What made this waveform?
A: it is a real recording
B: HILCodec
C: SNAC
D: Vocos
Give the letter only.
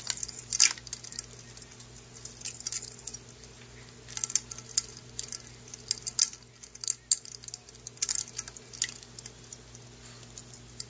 A